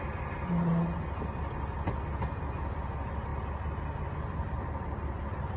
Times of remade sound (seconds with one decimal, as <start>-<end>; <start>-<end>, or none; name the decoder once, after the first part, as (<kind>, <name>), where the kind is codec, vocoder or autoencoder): none